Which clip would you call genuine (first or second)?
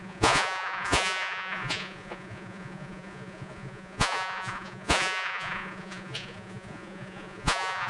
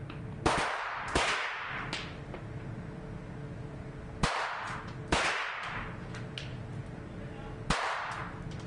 second